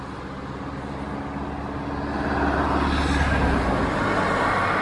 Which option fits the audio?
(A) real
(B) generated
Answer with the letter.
A